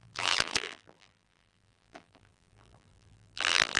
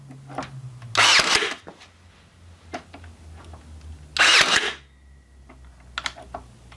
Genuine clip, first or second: second